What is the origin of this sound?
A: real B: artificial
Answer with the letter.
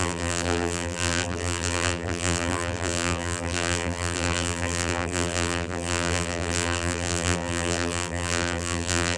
B